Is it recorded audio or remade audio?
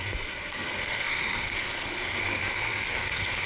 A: remade